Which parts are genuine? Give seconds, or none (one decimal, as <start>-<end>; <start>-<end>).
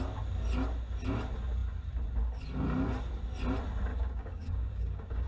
0.0-3.9